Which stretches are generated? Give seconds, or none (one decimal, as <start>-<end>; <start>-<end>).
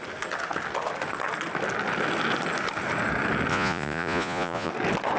3.5-4.7